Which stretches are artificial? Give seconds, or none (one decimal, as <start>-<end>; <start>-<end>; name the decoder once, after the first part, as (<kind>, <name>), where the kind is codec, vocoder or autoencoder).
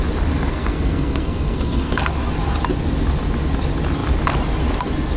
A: 0.5-2.0 (codec, SNAC)